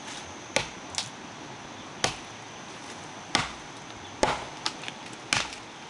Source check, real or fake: real